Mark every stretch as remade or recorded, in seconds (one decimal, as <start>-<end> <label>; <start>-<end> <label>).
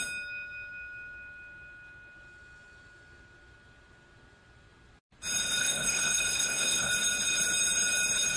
0.0-5.6 recorded; 5.6-6.9 remade; 6.9-8.4 recorded